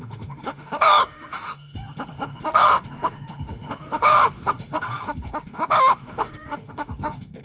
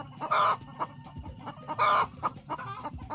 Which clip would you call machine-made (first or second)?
first